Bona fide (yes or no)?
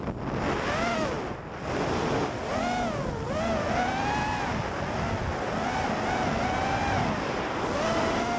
yes